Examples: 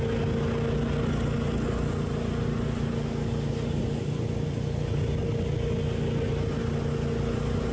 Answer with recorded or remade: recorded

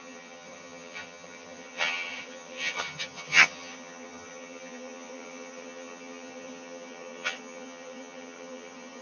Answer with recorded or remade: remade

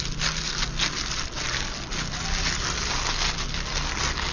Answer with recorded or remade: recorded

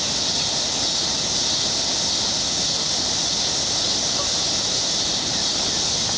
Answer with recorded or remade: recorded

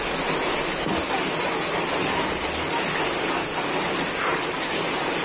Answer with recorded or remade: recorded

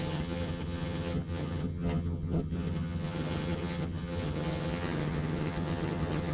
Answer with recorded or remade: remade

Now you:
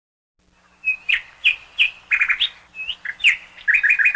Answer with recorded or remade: recorded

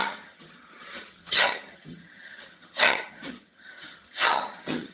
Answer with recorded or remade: remade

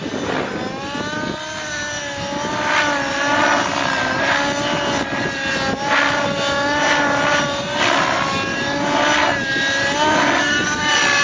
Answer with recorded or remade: recorded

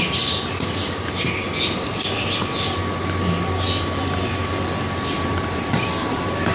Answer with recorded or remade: recorded